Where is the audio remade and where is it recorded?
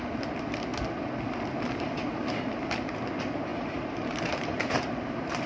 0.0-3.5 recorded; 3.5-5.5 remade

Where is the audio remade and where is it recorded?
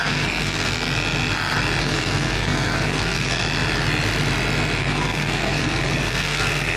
0.0-0.7 remade; 0.7-1.8 recorded; 1.8-3.4 remade; 3.4-4.8 recorded; 4.8-6.8 remade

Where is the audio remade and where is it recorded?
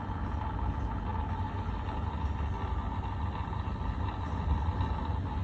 0.0-5.4 recorded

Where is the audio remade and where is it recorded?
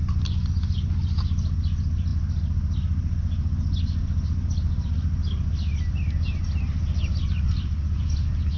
0.0-8.6 recorded